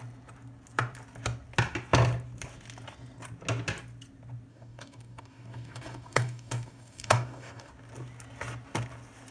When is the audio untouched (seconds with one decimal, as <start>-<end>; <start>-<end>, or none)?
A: 0.0-4.5; 7.7-9.3